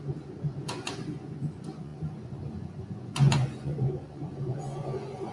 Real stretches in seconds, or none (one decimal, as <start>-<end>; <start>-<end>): none